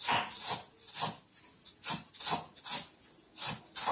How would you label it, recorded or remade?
recorded